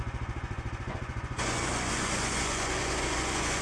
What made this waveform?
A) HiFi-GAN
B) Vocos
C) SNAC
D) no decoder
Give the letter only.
B